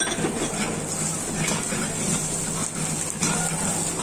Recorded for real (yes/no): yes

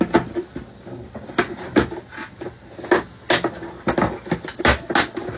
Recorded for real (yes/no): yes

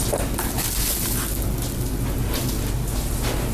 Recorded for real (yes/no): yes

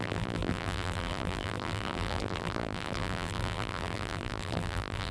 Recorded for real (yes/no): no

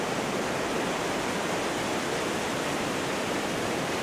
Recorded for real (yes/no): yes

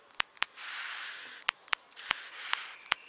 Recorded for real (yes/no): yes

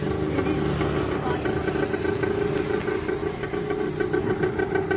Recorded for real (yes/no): yes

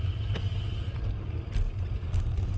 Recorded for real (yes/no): yes